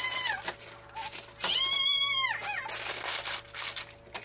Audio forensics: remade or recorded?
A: recorded